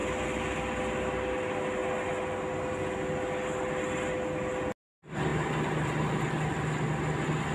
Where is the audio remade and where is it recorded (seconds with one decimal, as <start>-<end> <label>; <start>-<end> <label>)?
0.0-7.5 recorded